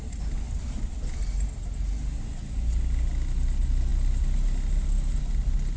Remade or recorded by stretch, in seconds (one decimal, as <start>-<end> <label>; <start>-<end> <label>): 0.0-5.8 recorded